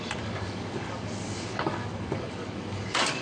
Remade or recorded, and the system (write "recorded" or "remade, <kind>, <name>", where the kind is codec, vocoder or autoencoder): remade, codec, DAC